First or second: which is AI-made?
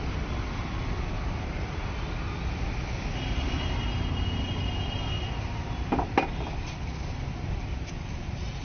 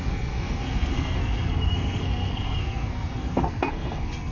second